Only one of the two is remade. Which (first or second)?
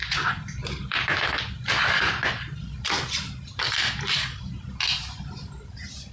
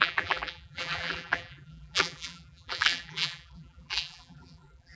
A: second